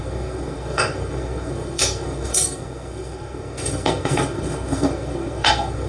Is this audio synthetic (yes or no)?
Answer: yes